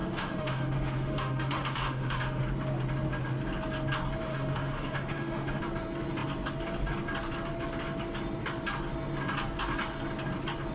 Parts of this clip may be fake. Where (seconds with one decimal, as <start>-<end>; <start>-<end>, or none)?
0.0-2.4; 4.3-5.6